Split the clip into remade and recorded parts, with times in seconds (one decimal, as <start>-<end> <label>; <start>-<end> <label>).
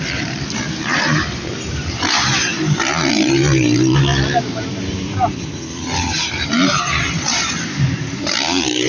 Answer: 0.0-8.9 remade